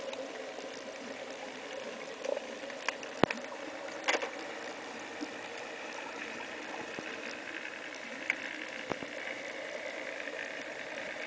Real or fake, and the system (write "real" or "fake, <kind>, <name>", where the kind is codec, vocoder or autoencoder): real